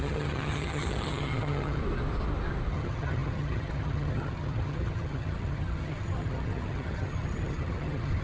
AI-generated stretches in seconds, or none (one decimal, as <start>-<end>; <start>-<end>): 0.0-1.8; 2.7-8.2